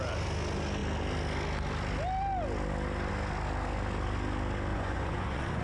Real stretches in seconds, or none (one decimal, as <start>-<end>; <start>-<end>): 0.0-4.7